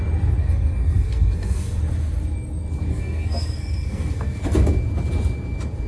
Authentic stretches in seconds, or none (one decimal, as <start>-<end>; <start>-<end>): 0.0-0.4; 1.8-2.9; 4.6-5.9